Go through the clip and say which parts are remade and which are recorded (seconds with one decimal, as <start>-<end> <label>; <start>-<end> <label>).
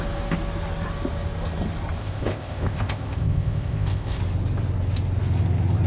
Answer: 0.0-2.0 recorded; 2.0-4.2 remade; 4.2-5.9 recorded